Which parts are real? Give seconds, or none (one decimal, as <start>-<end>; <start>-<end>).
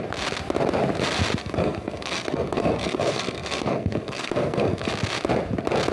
0.0-1.4; 4.9-5.9